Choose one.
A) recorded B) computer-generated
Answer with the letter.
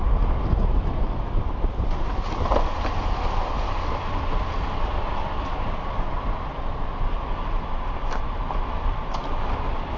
A